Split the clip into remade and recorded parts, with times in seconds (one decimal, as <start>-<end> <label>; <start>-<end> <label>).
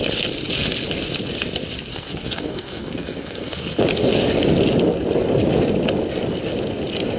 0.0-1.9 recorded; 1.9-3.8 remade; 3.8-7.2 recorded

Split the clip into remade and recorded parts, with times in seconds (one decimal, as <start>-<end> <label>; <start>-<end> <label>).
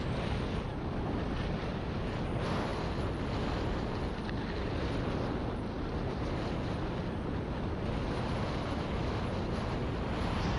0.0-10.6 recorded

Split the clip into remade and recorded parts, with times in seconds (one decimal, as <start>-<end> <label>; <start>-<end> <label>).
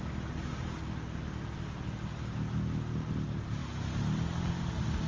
0.0-5.1 recorded